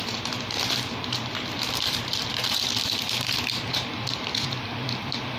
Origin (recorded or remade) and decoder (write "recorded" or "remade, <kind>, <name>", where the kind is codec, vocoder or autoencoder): remade, vocoder, BigVGAN v2